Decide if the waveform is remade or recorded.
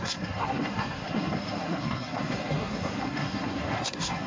remade